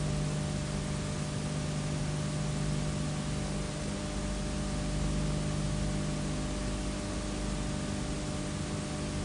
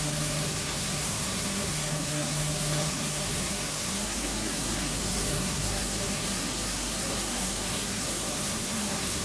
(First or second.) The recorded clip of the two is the first